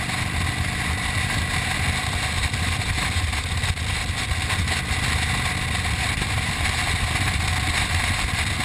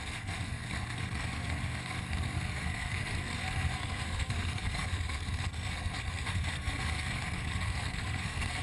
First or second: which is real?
first